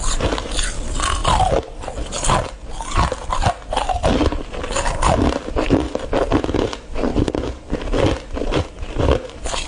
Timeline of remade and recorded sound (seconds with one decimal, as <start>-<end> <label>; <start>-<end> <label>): 0.0-9.7 recorded